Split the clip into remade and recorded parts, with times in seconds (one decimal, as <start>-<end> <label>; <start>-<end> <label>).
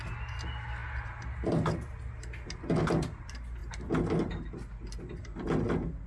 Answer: 0.0-6.1 recorded